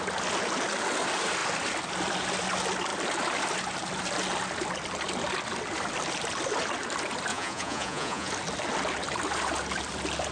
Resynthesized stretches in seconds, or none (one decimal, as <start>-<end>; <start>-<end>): 7.3-8.3